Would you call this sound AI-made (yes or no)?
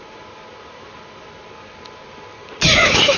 no